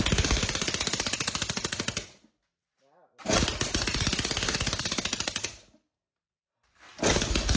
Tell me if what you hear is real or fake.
real